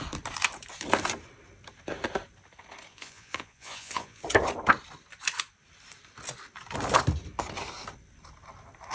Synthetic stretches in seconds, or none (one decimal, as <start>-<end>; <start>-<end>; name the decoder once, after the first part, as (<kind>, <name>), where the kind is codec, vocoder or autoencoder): 2.9-4.2 (vocoder, Vocos)